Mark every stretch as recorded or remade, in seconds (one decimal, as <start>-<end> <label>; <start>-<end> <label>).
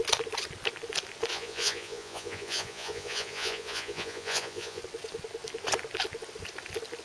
0.0-1.3 recorded; 1.3-4.8 remade; 4.8-7.0 recorded